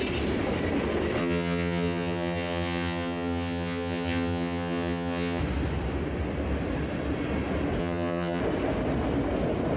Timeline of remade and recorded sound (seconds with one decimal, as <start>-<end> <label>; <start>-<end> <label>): 0.0-1.2 recorded; 1.2-5.4 remade; 5.4-7.8 recorded; 7.8-8.4 remade; 8.4-9.8 recorded

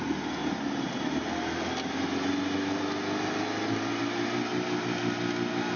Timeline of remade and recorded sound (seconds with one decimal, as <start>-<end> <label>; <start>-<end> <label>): 0.0-5.8 recorded